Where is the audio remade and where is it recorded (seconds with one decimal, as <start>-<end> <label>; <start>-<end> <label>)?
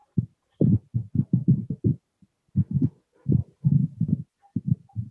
0.0-2.5 remade; 2.5-3.4 recorded; 3.4-4.1 remade; 4.1-5.1 recorded